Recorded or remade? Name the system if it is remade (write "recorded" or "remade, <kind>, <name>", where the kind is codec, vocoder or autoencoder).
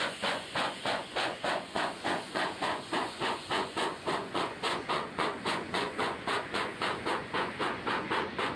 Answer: remade, vocoder, Vocos